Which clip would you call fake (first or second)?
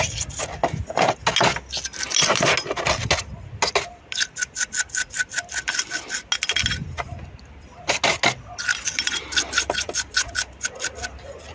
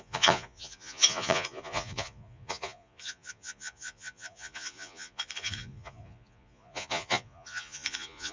second